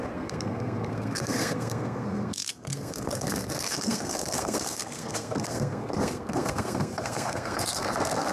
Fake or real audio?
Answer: fake